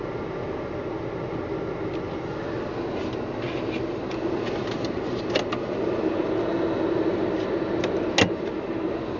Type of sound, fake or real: real